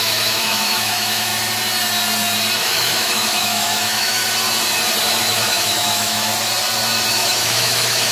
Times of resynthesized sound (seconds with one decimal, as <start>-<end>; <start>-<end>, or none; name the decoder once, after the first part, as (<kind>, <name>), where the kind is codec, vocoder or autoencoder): 0.0-1.3 (autoencoder, DAC-VAE); 2.6-4.2; 5.2-6.3; 7.1-8.1